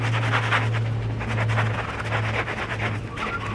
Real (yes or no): yes